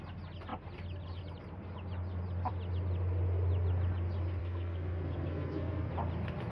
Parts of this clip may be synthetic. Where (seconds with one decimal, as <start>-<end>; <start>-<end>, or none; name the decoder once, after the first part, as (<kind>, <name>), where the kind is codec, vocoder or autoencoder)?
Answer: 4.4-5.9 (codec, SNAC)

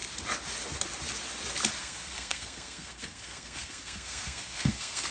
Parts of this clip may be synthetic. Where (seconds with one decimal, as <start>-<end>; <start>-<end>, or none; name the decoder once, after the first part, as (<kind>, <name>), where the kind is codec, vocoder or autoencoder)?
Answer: 1.8-5.1 (codec, SNAC)

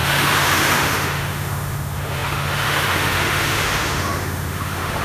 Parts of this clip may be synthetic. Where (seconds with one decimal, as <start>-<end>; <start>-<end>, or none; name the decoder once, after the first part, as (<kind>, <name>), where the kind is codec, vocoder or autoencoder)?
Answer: 0.0-5.0 (autoencoder, DAC-VAE)